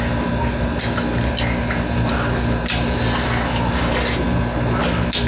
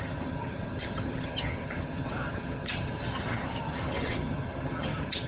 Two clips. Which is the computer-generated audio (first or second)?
second